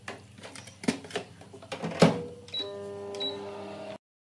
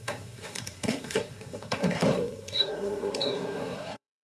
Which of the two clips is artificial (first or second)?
second